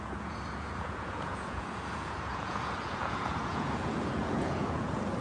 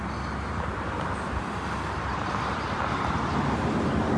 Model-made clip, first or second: first